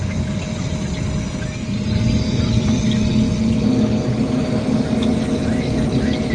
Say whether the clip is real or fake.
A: real